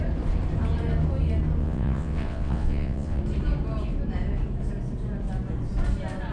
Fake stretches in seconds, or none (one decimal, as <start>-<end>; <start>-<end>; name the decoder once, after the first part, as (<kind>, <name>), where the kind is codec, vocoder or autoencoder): 1.6-3.2 (vocoder, WaveNeXt)